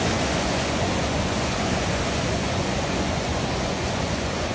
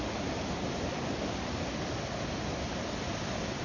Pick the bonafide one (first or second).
second